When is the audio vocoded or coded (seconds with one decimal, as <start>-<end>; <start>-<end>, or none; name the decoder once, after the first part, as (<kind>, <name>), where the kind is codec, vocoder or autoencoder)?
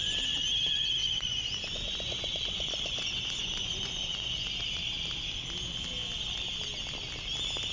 1.0-4.5 (vocoder, Vocos)